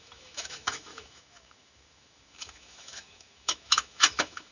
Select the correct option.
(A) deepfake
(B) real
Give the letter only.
A